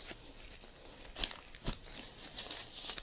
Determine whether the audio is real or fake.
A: real